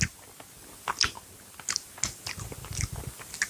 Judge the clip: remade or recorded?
recorded